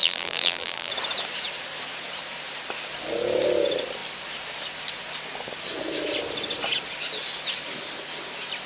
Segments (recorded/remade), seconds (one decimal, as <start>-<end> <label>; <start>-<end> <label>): 0.0-0.9 remade; 0.9-8.7 recorded